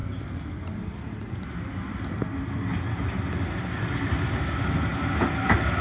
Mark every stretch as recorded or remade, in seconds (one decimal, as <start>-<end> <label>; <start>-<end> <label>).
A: 0.0-5.8 recorded